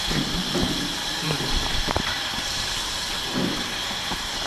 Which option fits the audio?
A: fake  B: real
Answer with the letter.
A